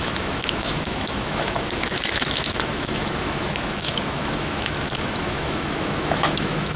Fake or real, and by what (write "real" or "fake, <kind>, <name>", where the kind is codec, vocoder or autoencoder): fake, autoencoder, DAC-VAE